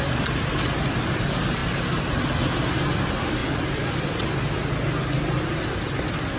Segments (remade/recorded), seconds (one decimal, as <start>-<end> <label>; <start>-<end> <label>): 0.0-6.4 recorded